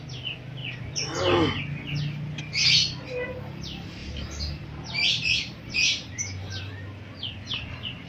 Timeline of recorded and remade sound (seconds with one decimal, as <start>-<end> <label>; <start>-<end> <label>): 0.0-4.0 recorded; 4.0-6.6 remade; 6.6-8.1 recorded